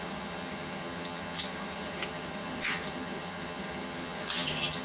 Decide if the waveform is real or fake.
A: fake